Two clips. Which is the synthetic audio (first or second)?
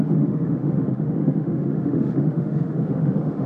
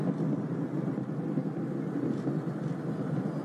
first